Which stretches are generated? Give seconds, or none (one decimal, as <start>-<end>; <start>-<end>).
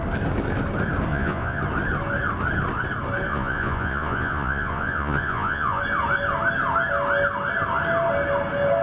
1.1-1.6; 3.3-5.8